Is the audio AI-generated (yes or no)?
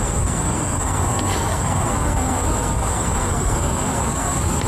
yes